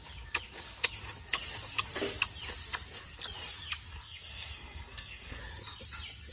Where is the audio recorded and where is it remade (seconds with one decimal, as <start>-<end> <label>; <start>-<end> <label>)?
0.0-3.9 recorded; 3.9-5.4 remade; 5.4-6.3 recorded